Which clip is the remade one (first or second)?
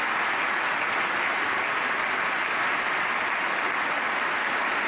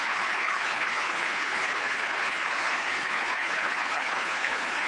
second